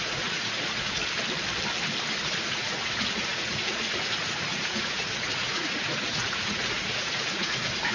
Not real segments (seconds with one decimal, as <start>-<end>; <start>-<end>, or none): 0.0-1.0; 2.2-7.9